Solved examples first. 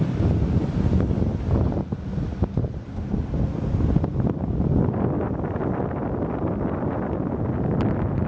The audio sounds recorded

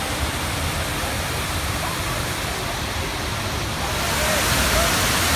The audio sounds recorded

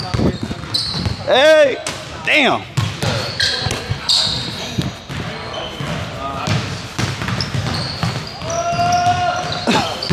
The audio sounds recorded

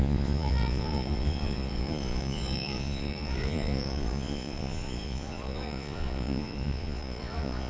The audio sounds remade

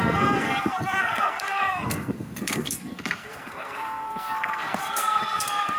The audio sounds remade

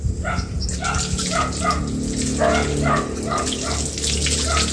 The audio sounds recorded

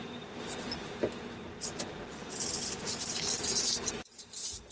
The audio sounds remade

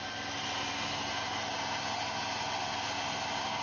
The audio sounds recorded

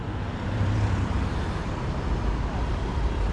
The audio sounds remade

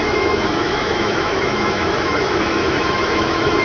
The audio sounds remade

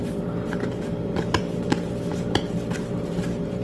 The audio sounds remade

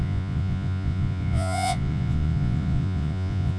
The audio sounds remade